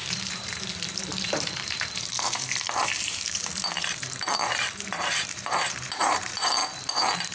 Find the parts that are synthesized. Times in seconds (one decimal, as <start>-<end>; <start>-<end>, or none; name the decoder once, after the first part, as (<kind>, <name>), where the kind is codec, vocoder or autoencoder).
0.0-6.6 (vocoder, BigVGAN v2)